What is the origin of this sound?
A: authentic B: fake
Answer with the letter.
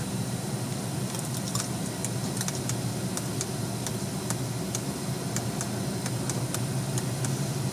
A